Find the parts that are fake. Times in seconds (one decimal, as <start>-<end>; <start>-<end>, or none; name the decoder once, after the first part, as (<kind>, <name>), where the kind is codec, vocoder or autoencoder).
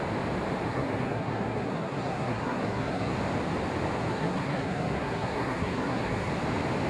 0.7-3.1 (codec, SNAC); 4.1-6.3